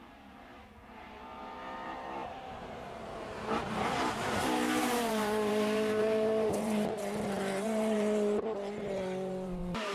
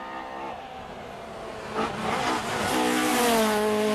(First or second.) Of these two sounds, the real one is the second